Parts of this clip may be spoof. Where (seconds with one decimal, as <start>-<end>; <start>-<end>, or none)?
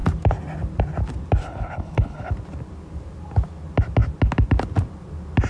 1.4-2.3